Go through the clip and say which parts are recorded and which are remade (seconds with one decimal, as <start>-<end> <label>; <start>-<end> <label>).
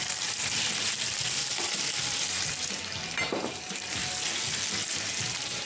0.0-1.4 remade; 1.4-2.2 recorded; 2.2-4.0 remade; 4.0-4.8 recorded; 4.8-5.7 remade